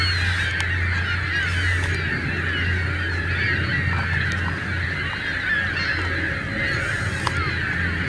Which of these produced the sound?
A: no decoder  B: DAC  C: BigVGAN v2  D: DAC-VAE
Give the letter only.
A